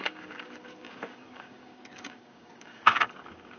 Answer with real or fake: fake